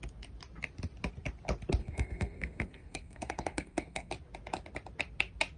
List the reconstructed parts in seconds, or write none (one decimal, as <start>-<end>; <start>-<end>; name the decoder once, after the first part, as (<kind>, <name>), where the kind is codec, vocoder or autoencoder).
1.8-4.1 (codec, SNAC)